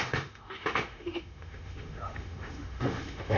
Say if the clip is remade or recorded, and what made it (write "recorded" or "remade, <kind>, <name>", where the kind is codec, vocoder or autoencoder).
remade, autoencoder, DAC-VAE